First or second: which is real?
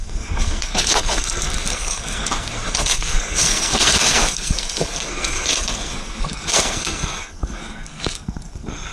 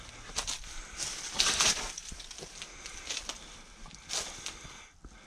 second